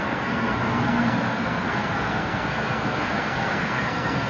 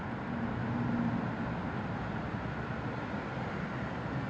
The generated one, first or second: first